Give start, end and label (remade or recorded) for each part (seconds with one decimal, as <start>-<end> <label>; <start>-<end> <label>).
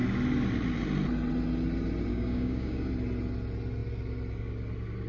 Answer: 0.0-2.1 recorded; 2.1-2.9 remade; 2.9-5.1 recorded